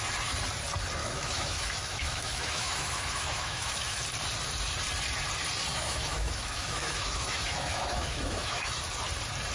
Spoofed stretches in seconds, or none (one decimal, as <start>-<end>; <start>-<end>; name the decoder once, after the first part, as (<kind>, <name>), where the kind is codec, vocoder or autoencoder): 1.0-4.0 (autoencoder, DAC-VAE); 5.7-8.8